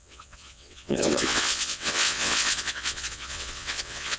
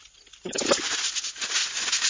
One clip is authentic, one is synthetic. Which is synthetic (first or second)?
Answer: first